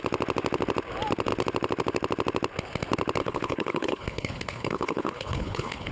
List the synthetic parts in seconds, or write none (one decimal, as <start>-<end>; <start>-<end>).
3.2-5.9